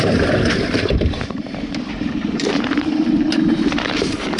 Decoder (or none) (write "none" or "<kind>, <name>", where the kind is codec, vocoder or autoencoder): vocoder, BigVGAN v2